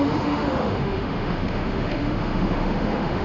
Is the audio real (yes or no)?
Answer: no